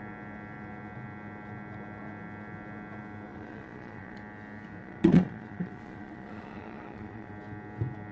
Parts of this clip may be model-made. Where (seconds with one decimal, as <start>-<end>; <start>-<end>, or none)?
3.3-4.2; 4.8-7.3